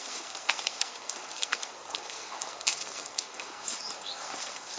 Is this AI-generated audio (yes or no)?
yes